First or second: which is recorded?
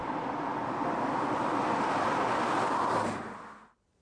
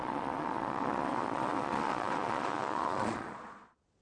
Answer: first